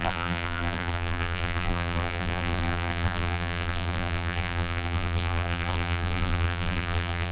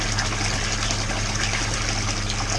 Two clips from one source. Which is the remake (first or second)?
first